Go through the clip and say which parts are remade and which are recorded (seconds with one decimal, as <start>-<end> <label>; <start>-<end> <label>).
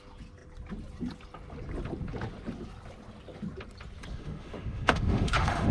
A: 0.0-4.1 recorded; 4.1-5.7 remade